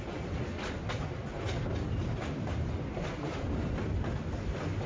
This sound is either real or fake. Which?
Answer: real